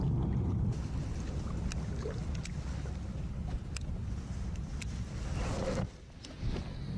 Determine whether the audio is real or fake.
real